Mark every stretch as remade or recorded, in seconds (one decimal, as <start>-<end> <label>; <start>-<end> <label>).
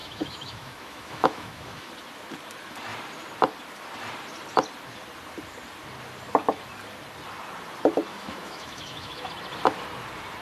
0.0-1.9 remade; 1.9-8.1 recorded; 8.1-9.3 remade; 9.3-10.4 recorded